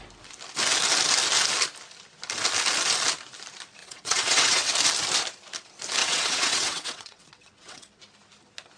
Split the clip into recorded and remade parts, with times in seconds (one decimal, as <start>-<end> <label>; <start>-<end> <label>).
0.0-3.8 recorded; 3.8-4.7 remade; 4.7-6.0 recorded; 6.0-8.0 remade; 8.0-8.8 recorded